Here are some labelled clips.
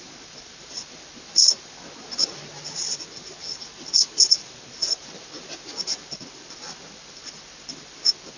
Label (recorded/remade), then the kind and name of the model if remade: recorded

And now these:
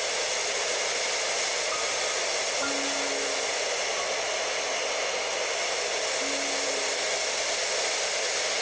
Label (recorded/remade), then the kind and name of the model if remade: recorded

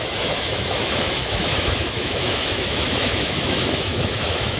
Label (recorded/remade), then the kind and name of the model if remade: remade, autoencoder, DAC-VAE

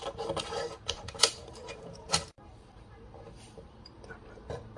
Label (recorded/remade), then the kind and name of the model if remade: remade, vocoder, BigVGAN v2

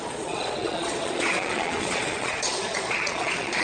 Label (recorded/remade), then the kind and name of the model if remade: remade, vocoder, Vocos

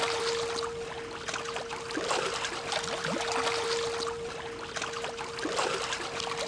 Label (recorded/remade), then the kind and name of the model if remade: recorded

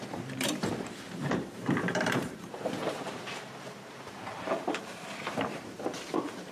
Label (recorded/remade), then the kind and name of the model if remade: remade, vocoder, BigVGAN v2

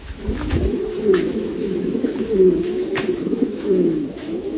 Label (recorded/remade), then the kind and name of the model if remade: remade, autoencoder, DAC-VAE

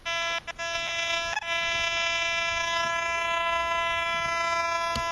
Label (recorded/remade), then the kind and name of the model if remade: recorded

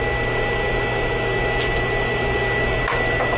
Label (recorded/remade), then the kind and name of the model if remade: recorded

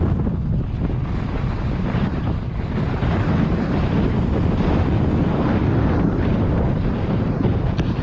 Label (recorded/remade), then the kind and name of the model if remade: recorded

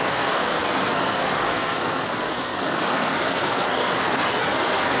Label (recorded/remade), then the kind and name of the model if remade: remade, codec, SNAC